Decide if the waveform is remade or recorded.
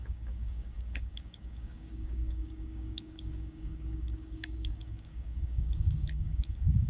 remade